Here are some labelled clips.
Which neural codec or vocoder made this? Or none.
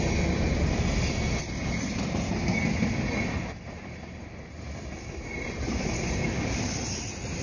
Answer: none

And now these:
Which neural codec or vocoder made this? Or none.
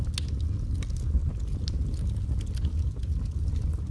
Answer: none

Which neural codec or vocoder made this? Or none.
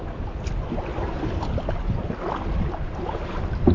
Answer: none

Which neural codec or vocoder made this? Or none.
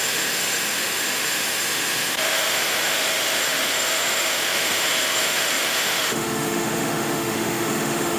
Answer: autoencoder, DAC-VAE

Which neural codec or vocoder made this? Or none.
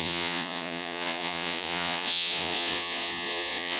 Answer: vocoder, Vocos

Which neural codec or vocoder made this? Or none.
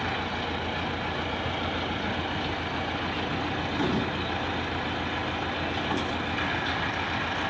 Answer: none